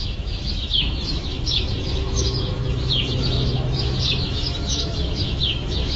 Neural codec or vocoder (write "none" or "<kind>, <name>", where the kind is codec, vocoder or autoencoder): autoencoder, DAC-VAE